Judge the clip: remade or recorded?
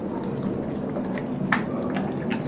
recorded